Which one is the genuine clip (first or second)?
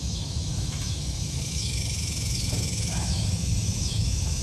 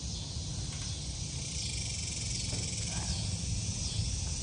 second